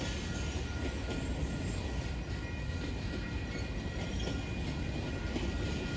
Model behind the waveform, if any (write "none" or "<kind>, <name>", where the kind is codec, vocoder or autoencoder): none